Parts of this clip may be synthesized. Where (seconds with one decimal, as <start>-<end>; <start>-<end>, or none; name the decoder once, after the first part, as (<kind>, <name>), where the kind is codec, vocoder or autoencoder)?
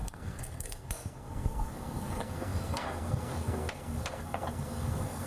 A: 0.0-5.3 (codec, SNAC)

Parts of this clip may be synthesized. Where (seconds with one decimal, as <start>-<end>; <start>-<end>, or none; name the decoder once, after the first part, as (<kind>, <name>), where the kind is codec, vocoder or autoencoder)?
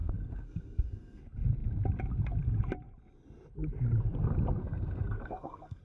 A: 0.0-1.2 (codec, SNAC); 4.6-5.8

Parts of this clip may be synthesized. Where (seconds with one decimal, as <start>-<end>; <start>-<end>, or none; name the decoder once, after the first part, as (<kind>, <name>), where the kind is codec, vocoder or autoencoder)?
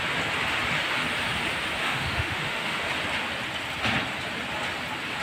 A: 1.8-2.9 (autoencoder, DAC-VAE)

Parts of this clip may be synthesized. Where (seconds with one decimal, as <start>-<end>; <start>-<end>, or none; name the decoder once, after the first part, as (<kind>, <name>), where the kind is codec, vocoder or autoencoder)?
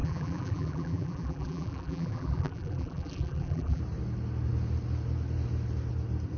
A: 0.0-3.8 (vocoder, BigVGAN v2)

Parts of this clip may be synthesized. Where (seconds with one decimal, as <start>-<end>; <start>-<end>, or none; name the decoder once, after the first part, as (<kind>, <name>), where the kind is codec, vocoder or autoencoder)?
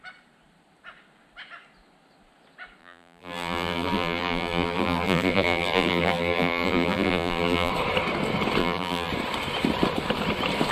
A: 2.8-7.7 (vocoder, BigVGAN v2); 8.6-9.1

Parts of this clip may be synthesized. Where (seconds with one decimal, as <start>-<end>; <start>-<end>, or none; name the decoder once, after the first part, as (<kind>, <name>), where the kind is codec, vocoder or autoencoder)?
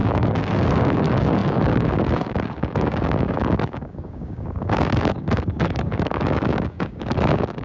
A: 0.0-7.6 (codec, DAC)